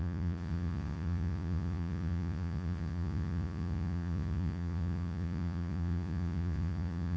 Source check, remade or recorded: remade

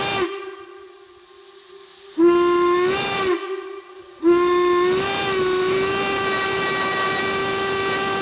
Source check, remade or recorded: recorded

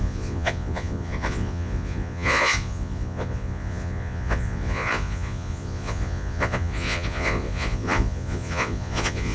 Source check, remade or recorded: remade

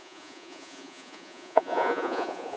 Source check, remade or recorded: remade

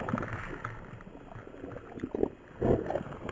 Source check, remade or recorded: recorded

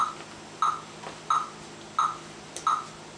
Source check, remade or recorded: recorded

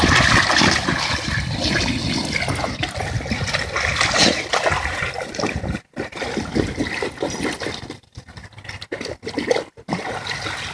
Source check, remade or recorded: recorded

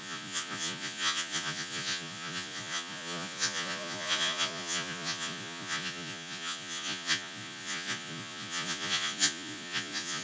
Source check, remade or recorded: remade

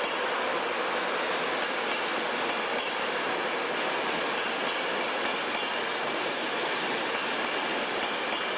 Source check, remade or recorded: recorded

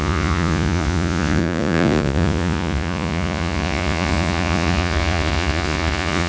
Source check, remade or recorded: remade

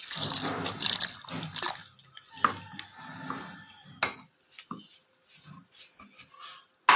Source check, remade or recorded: recorded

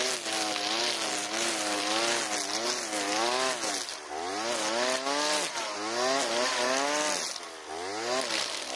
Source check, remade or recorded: recorded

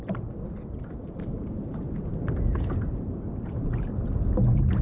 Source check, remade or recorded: recorded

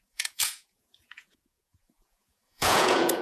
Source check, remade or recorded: remade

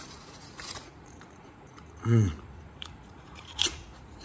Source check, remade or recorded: remade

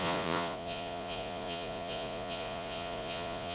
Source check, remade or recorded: remade